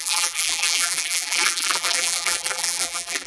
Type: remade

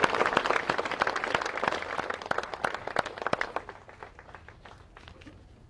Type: recorded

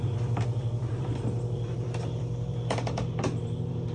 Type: remade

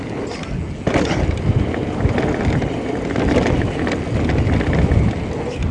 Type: recorded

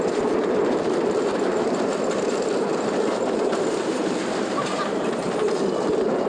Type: remade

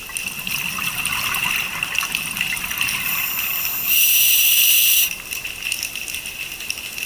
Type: recorded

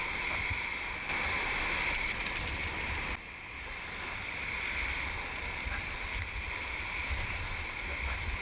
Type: recorded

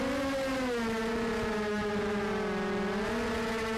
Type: recorded